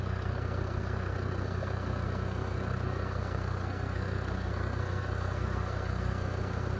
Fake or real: fake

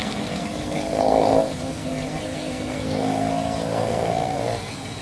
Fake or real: fake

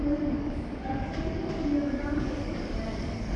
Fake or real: fake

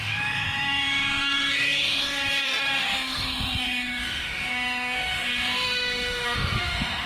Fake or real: fake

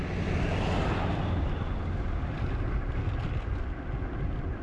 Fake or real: real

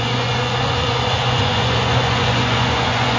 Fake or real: fake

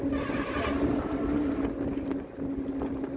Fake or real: real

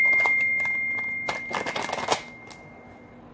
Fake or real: real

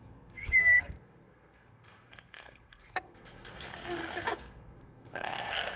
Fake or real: fake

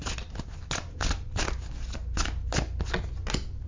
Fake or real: real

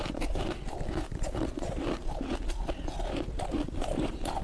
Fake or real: real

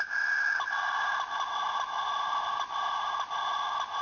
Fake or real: real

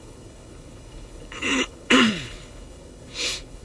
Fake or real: fake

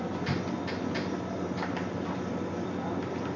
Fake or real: real